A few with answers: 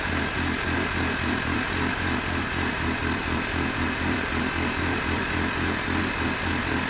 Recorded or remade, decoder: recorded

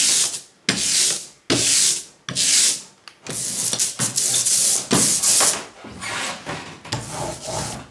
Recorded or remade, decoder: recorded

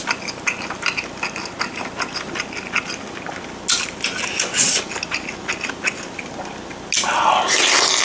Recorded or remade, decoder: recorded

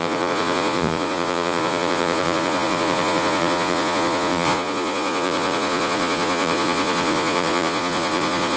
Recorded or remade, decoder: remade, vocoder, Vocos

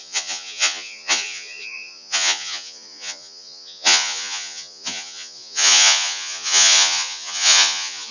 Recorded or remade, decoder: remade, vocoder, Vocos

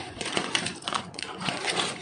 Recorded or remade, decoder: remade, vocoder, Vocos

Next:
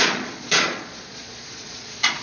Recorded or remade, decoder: remade, vocoder, Vocos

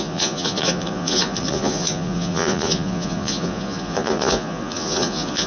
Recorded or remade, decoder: remade, vocoder, Vocos